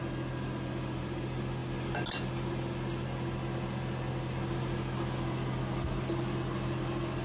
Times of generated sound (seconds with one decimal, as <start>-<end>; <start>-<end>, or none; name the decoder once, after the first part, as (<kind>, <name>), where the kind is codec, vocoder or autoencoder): none